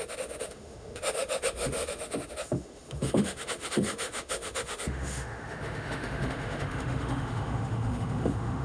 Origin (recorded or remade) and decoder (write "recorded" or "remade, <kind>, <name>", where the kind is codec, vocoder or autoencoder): remade, autoencoder, DAC-VAE